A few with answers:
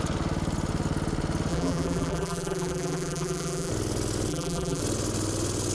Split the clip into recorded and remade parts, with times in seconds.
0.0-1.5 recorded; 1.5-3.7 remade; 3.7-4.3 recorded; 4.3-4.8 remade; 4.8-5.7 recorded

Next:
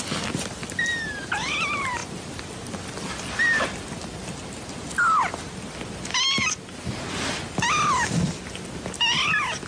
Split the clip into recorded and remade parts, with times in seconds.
0.0-9.7 recorded

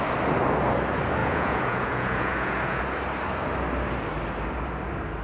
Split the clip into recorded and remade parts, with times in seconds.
0.0-1.2 recorded; 1.2-2.8 remade; 2.8-5.2 recorded

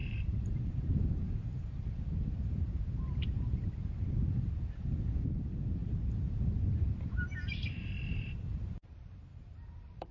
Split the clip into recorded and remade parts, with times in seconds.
0.0-3.7 remade; 3.7-5.8 recorded; 5.8-7.9 remade; 7.9-9.3 recorded; 9.3-10.1 remade

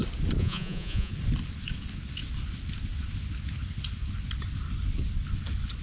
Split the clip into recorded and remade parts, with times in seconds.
0.0-0.4 recorded; 0.4-1.1 remade; 1.1-5.8 recorded

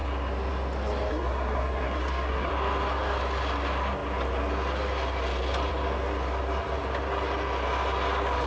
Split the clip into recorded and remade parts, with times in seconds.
0.0-1.1 recorded; 1.1-2.5 remade; 2.5-8.5 recorded